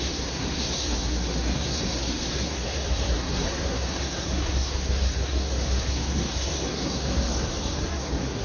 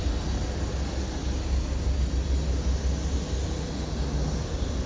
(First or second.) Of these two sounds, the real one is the second